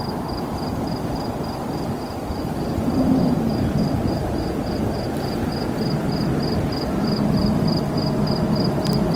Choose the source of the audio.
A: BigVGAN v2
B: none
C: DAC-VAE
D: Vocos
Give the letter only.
B